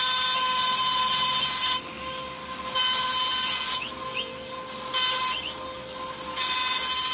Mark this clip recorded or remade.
recorded